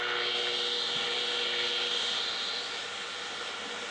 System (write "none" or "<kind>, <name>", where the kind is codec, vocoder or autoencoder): none